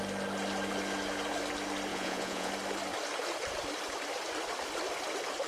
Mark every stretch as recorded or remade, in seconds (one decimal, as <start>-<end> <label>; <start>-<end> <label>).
0.0-1.9 recorded; 1.9-2.5 remade; 2.5-5.5 recorded